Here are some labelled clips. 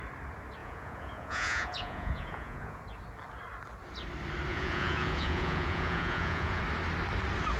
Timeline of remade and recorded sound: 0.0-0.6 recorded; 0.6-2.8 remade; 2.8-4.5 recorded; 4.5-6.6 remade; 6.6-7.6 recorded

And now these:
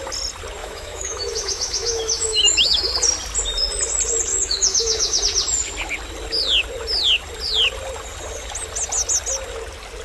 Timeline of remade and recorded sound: 0.0-0.6 recorded; 0.6-2.9 remade; 2.9-4.3 recorded; 4.3-5.2 remade; 5.2-10.0 recorded

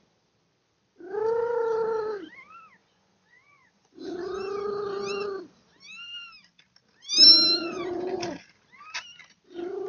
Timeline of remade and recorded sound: 0.0-2.8 recorded; 2.8-4.2 remade; 4.2-7.6 recorded; 7.6-8.2 remade; 8.2-9.9 recorded

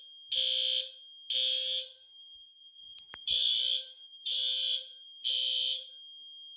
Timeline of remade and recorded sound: 0.0-1.9 recorded; 1.9-5.9 remade; 5.9-6.6 recorded

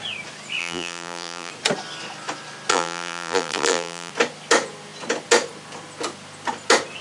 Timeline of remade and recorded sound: 0.0-0.6 recorded; 0.6-1.5 remade; 1.5-2.7 recorded; 2.7-4.1 remade; 4.1-7.0 recorded

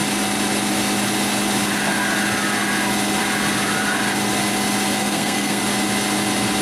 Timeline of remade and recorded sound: 0.0-5.0 recorded; 5.0-5.6 remade; 5.6-6.6 recorded

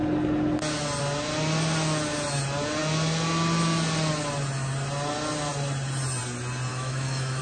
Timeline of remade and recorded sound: 0.0-6.7 recorded; 6.7-7.4 remade